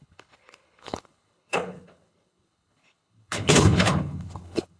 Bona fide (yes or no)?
no